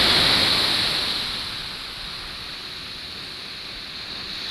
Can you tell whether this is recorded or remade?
recorded